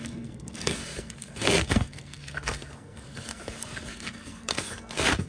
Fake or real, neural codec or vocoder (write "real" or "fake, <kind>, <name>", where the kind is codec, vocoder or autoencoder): fake, codec, SNAC